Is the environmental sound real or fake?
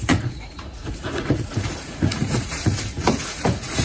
fake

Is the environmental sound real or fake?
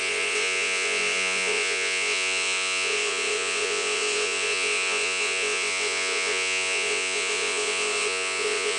fake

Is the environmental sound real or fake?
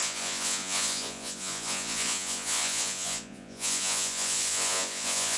fake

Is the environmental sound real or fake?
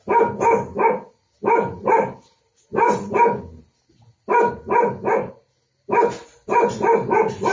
real